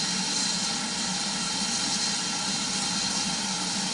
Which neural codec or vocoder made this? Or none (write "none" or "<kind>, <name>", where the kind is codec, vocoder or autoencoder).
none